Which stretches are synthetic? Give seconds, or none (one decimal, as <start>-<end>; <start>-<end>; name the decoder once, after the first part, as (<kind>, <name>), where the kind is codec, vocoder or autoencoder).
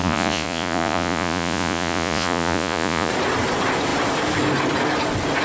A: 0.0-3.1 (vocoder, Vocos)